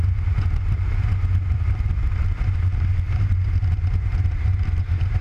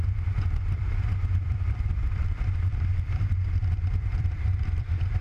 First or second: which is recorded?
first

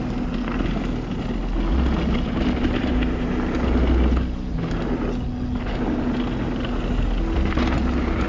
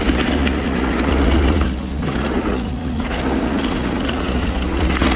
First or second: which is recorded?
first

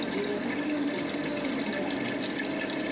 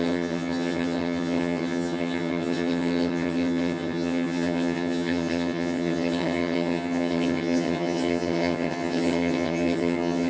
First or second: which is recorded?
first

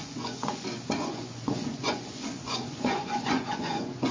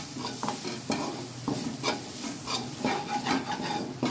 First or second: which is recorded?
second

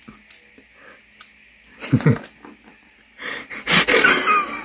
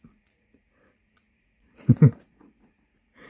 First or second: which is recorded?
first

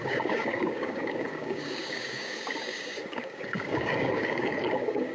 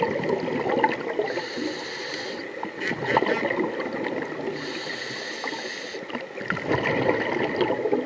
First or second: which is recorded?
second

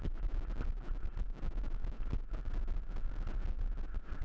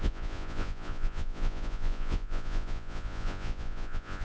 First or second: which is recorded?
first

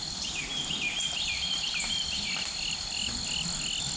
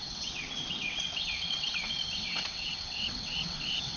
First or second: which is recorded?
first